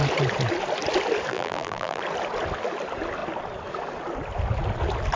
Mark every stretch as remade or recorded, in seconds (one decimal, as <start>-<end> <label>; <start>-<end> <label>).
0.0-1.3 recorded; 1.3-2.0 remade; 2.0-5.2 recorded